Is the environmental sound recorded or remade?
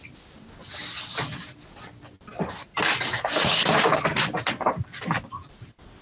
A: recorded